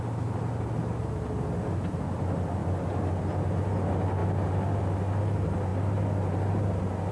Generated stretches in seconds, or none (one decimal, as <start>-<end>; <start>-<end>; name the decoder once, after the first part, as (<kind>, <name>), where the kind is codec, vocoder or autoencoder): none